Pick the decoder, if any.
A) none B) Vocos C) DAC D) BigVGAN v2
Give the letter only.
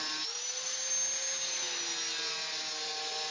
A